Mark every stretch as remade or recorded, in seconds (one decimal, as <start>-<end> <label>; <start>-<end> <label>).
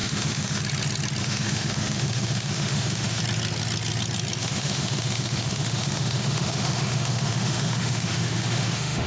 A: 0.0-0.6 remade; 0.6-1.2 recorded; 1.2-3.2 remade; 3.2-4.4 recorded; 4.4-9.1 remade